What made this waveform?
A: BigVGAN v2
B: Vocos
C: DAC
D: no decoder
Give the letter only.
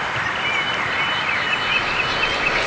D